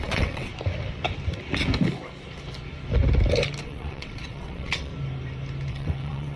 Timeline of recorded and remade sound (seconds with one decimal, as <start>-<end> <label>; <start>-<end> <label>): 0.0-0.5 remade; 0.5-3.6 recorded; 3.6-4.9 remade; 4.9-5.7 recorded; 5.7-6.4 remade